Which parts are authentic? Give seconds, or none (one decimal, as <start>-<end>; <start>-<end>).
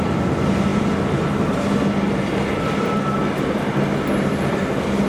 0.0-5.1